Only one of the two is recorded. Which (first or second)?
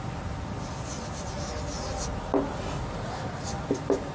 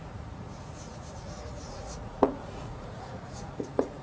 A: first